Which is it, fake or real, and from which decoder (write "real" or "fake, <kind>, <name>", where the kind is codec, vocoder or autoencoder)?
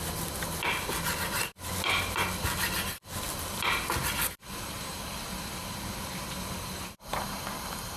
real